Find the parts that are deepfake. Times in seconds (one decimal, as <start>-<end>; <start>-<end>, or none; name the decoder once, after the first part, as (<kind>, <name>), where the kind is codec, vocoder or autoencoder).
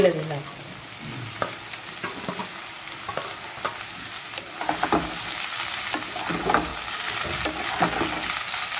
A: none